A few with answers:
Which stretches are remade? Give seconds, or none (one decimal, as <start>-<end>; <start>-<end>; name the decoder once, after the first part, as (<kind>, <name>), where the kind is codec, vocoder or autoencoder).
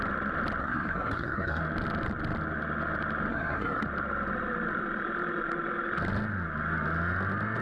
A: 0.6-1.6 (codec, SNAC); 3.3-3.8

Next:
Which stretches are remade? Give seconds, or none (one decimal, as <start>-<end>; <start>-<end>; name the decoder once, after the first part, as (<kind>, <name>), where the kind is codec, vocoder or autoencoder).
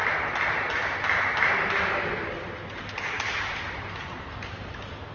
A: none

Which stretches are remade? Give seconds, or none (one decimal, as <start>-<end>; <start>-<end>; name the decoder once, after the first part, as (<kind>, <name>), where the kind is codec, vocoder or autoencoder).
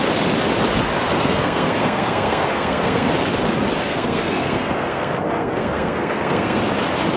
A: 1.1-3.1 (codec, SNAC); 3.8-6.6